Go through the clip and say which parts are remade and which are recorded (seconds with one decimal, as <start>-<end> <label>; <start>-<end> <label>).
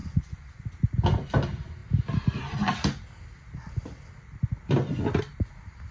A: 0.0-0.6 remade; 0.6-5.9 recorded